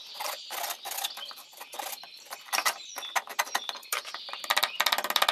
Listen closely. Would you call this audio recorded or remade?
recorded